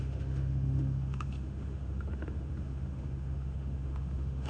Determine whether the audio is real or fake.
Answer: fake